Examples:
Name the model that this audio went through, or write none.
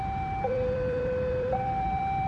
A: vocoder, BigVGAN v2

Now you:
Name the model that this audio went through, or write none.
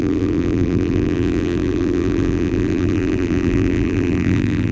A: vocoder, BigVGAN v2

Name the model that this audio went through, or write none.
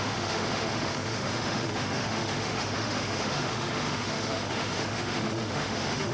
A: autoencoder, DAC-VAE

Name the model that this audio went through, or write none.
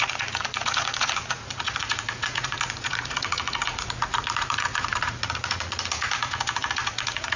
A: vocoder, Vocos